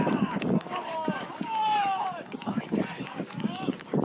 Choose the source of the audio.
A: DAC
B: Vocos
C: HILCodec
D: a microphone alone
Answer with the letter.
A